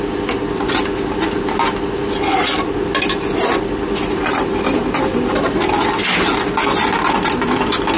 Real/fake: real